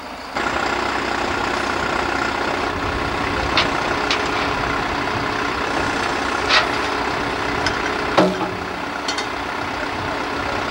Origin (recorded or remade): recorded